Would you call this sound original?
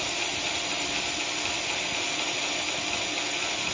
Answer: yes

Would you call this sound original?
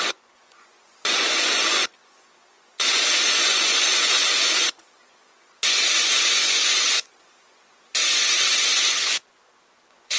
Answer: no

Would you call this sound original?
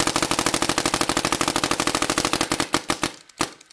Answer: yes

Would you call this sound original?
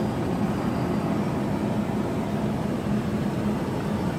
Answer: yes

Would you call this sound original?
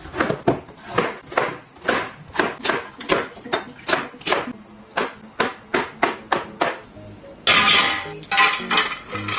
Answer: yes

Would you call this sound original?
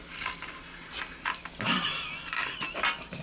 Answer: yes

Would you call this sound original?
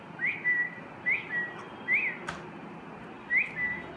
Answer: yes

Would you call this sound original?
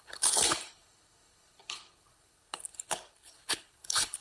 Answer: no